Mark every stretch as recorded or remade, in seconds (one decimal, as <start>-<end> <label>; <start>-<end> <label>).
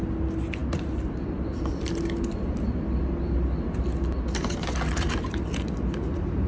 0.0-6.5 recorded